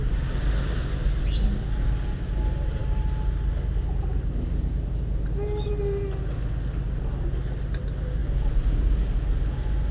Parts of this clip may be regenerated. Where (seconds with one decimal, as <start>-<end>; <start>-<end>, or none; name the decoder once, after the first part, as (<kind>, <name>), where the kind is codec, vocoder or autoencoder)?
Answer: none